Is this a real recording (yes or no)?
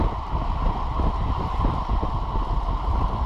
yes